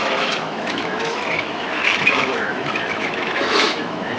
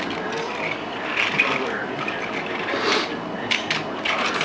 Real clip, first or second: second